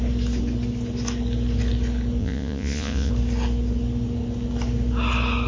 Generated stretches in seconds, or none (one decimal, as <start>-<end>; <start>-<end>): 2.2-3.1